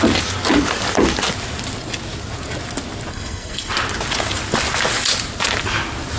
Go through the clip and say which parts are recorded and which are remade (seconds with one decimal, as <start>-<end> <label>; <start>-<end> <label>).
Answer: 0.0-3.1 recorded; 3.1-3.7 remade; 3.7-6.2 recorded